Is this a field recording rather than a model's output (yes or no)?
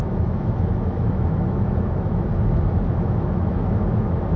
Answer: no